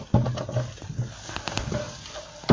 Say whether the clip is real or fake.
real